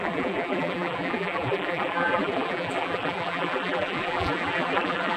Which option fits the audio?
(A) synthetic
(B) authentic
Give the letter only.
A